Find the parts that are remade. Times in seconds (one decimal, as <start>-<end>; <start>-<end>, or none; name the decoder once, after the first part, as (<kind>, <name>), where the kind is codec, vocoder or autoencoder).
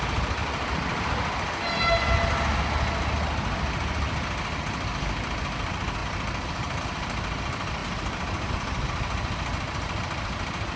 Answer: 6.0-6.8 (vocoder, BigVGAN v2); 7.8-8.5